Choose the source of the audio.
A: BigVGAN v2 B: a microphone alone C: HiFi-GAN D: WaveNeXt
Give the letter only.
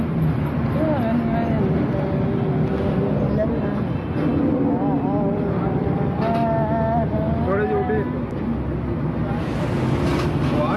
B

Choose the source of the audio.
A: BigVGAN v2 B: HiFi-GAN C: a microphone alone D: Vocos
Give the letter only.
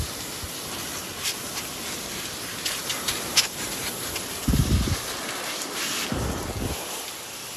A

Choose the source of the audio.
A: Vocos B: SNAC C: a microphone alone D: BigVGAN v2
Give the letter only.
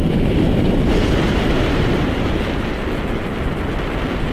C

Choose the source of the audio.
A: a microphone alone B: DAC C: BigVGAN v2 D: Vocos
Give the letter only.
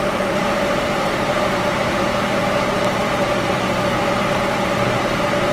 C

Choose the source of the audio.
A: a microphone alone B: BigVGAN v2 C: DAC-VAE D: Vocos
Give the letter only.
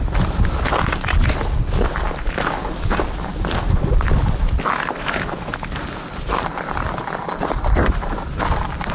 A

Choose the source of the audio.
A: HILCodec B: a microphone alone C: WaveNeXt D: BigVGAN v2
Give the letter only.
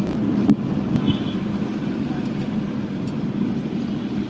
B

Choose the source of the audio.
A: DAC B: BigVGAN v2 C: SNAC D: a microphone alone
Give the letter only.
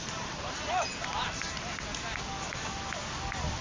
D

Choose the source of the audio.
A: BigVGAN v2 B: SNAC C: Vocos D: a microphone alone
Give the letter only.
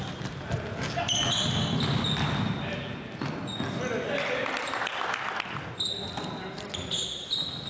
D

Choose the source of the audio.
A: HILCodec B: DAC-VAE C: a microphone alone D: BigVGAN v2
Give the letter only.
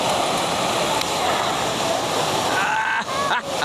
C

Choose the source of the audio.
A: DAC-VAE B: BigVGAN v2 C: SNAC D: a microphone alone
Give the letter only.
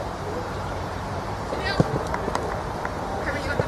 B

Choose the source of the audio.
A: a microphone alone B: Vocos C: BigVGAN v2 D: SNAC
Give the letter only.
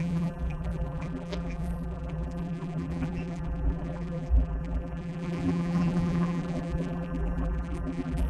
C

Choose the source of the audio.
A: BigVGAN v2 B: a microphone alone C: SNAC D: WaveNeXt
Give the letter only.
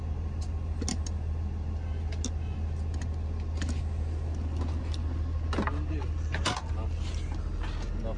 B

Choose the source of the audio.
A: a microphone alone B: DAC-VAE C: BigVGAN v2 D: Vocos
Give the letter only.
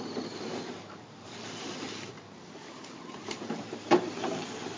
C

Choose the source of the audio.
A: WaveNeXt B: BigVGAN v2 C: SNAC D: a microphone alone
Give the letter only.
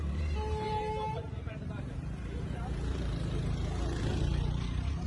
B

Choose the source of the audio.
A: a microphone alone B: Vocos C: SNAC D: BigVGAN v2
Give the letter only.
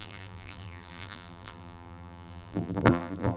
D